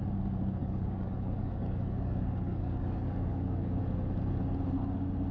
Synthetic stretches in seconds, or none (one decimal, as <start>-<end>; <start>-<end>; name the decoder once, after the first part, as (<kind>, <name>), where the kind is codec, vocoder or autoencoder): 0.6-3.8 (codec, DAC)